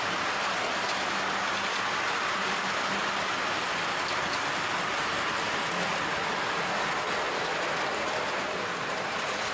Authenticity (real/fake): real